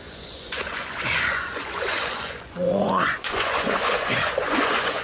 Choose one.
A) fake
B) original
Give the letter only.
A